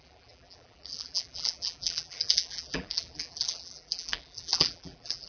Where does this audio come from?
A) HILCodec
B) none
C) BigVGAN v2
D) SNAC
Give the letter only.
C